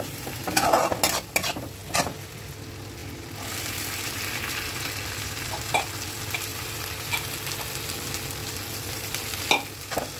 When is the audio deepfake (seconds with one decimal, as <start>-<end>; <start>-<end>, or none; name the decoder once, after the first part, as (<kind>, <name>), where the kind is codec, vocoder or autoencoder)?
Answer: 1.8-2.5 (vocoder, BigVGAN v2); 3.0-5.7; 6.5-7.3; 8.4-9.2